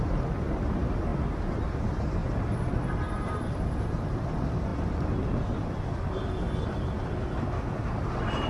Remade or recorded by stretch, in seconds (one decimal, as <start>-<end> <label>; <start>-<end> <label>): 0.0-1.1 remade; 1.1-1.8 recorded; 1.8-2.2 remade; 2.2-3.1 recorded; 3.1-4.7 remade; 4.7-7.8 recorded; 7.8-8.5 remade